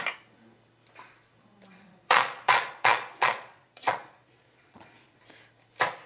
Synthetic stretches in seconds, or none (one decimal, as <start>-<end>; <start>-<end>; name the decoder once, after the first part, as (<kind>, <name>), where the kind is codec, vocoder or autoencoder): 1.7-5.2 (vocoder, Vocos)